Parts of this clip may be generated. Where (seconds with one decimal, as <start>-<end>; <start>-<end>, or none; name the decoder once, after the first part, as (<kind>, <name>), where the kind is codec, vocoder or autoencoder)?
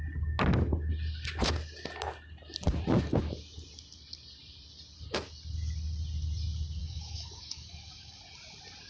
6.8-8.2 (codec, DAC)